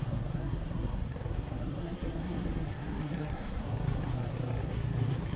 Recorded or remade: remade